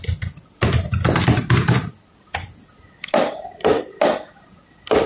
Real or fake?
real